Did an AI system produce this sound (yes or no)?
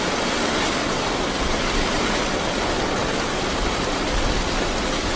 no